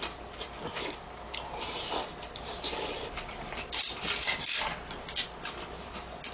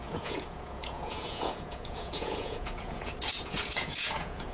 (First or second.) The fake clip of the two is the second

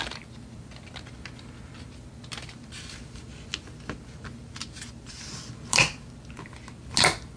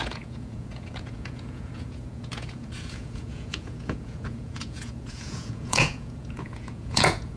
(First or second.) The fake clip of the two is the second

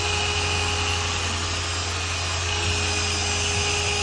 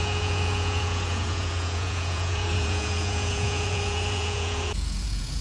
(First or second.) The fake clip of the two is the second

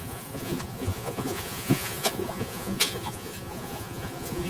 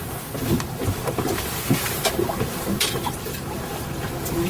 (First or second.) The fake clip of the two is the first